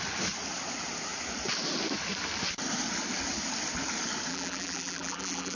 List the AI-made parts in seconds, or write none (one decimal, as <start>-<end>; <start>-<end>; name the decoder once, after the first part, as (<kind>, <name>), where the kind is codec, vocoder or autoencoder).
4.3-5.6 (vocoder, BigVGAN v2)